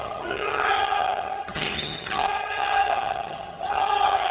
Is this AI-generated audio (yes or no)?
yes